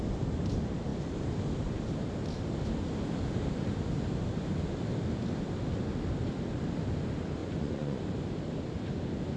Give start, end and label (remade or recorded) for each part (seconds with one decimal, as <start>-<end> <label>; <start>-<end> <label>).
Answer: 0.0-7.4 recorded; 7.4-8.0 remade; 8.0-9.4 recorded